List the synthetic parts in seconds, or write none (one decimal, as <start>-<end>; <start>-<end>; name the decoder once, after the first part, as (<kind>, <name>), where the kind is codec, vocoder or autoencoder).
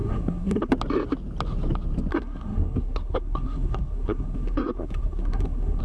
0.0-0.7 (codec, SNAC); 2.1-5.8